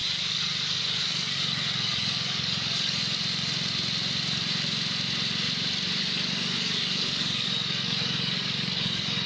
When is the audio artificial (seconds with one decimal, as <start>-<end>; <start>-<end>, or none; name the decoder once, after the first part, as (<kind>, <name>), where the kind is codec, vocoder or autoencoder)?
0.0-3.0 (codec, DAC); 6.0-9.3